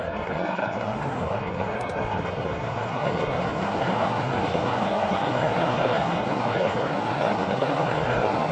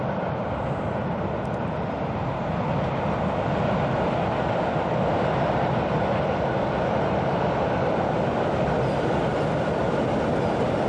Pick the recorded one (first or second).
second